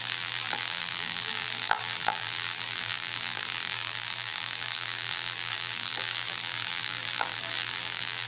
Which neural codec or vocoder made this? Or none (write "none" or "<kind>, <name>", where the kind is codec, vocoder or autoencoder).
vocoder, BigVGAN v2